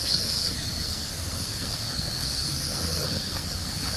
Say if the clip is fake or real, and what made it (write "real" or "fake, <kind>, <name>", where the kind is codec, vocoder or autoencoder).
fake, codec, SNAC